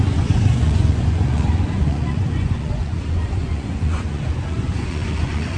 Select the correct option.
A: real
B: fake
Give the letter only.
B